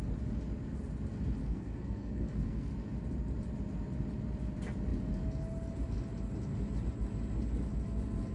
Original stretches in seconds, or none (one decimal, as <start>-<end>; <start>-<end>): 0.0-1.4; 2.7-8.3